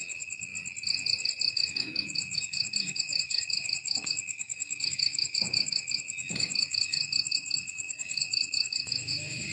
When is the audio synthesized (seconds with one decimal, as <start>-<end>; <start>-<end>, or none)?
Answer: 0.0-0.5; 1.5-9.5